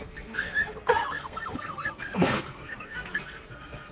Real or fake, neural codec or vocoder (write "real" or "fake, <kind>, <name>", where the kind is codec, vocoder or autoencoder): fake, codec, SNAC